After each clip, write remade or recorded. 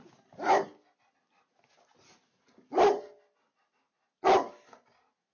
recorded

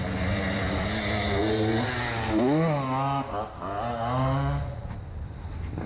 recorded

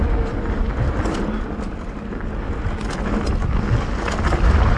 recorded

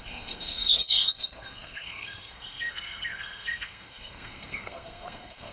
remade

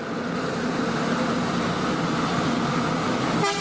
recorded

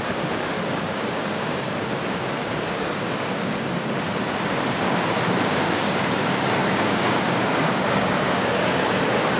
remade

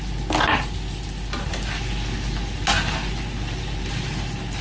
recorded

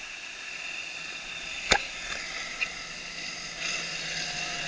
recorded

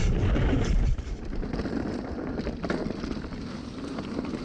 remade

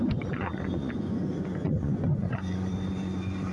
remade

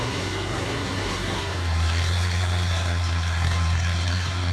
remade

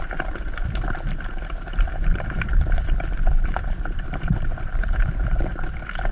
remade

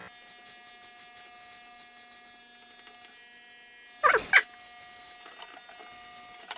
recorded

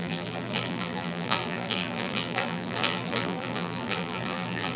remade